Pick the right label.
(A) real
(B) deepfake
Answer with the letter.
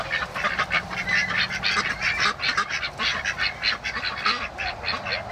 A